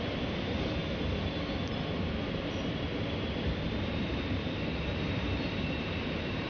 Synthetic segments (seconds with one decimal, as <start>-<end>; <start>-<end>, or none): 0.0-0.8; 2.3-2.9; 3.7-6.5